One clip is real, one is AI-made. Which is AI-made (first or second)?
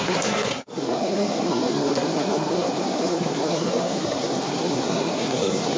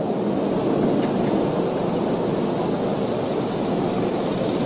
first